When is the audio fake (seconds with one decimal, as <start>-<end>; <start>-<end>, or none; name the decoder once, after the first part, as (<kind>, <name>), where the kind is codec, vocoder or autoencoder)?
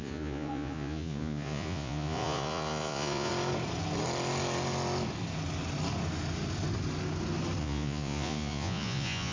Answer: 0.0-3.3 (vocoder, Vocos); 7.6-9.3